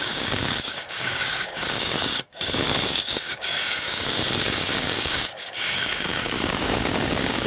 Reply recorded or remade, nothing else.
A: remade